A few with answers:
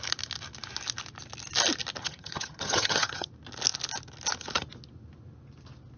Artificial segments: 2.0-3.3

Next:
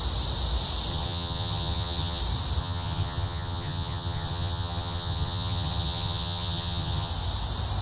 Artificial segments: 0.9-2.2; 2.6-7.1

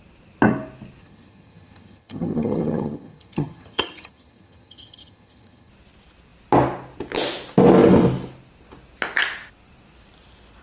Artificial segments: 1.0-5.7

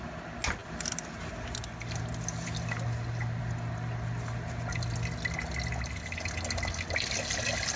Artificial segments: none

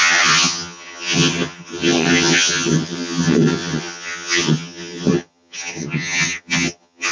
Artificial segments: 0.0-7.1

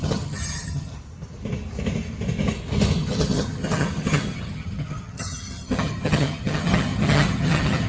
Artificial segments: 0.0-0.9; 3.0-7.9

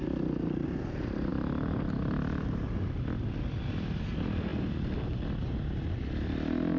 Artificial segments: none